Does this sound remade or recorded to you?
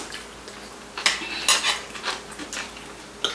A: recorded